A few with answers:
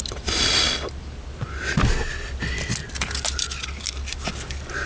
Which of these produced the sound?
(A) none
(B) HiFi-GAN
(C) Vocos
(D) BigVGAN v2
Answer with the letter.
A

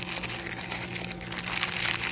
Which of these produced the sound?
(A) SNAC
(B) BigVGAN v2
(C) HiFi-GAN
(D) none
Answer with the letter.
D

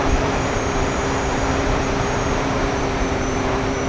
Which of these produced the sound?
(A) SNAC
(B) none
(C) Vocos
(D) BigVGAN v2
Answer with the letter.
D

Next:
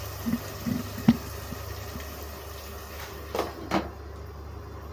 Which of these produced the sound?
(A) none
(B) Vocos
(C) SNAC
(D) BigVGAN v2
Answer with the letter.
A